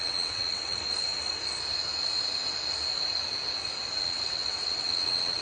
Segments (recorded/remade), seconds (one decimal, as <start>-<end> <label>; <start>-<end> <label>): 0.0-0.8 remade; 0.8-4.0 recorded; 4.0-5.4 remade